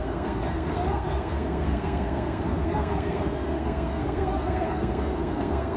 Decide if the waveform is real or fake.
fake